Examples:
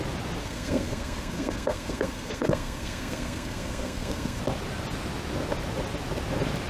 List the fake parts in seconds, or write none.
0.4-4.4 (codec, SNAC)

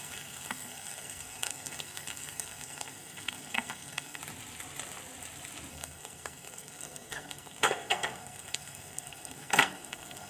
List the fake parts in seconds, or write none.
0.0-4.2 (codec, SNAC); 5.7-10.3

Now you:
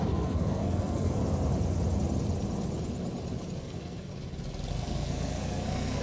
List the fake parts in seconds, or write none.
0.0-1.2 (codec, SNAC); 3.6-4.1; 4.7-6.0